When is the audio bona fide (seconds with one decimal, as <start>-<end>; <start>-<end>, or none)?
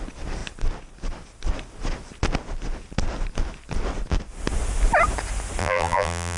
0.0-5.6